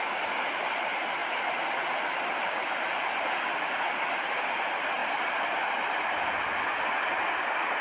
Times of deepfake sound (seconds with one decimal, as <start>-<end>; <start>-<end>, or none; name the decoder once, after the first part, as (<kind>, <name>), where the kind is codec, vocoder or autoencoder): 1.2-3.3 (vocoder, BigVGAN v2); 5.0-6.4